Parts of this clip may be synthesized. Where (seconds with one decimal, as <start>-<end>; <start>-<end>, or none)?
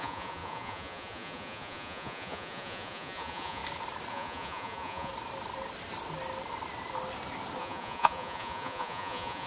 0.0-3.6; 4.1-5.1; 7.6-9.5